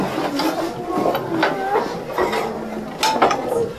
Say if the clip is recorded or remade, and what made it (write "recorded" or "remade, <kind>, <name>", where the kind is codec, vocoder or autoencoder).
recorded